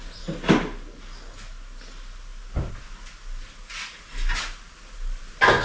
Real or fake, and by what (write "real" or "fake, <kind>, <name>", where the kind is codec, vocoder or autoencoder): real